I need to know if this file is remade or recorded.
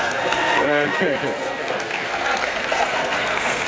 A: remade